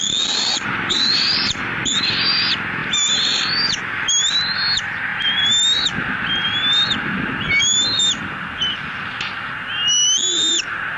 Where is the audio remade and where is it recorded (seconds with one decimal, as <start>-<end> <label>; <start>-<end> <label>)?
0.0-11.0 recorded